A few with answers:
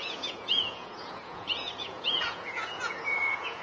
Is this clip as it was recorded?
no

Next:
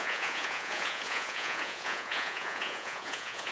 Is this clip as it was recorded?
no